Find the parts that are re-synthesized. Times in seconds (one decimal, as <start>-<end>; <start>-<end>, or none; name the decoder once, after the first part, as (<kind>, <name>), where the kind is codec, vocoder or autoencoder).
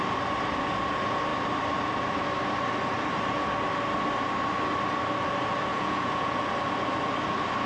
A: 5.7-6.4 (vocoder, Vocos)